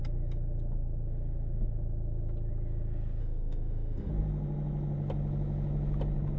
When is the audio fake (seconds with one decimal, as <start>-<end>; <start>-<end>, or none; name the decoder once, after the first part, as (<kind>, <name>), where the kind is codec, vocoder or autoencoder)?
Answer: 3.2-4.1 (autoencoder, DAC-VAE)